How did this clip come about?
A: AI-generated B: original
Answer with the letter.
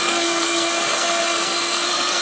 A